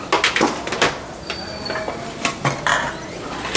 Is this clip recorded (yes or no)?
yes